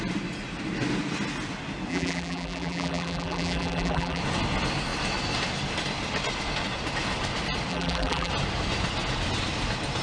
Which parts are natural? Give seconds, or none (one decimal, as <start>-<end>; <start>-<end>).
0.0-1.9; 4.2-7.7; 8.3-10.0